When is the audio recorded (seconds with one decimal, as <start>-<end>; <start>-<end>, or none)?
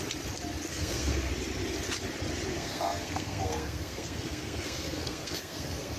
0.0-0.7; 1.3-2.5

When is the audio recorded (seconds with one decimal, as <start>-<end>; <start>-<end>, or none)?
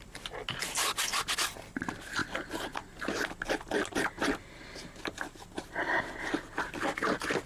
0.0-7.5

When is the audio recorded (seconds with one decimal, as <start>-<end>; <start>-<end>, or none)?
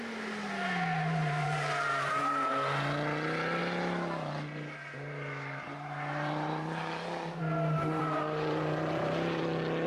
0.0-1.2; 2.5-3.6; 7.4-8.0; 9.4-9.9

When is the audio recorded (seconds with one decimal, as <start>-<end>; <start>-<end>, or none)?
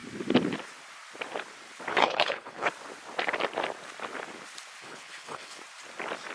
0.0-1.9; 2.7-4.8; 5.6-6.3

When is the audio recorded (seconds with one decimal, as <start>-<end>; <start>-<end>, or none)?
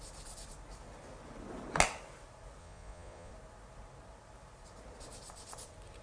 0.0-2.6; 3.3-6.0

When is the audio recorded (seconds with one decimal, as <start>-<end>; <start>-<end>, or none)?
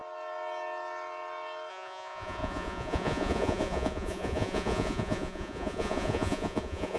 0.0-1.7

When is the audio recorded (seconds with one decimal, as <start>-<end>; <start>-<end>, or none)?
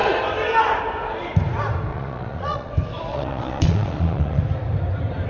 0.0-1.9; 2.7-3.1; 4.4-5.3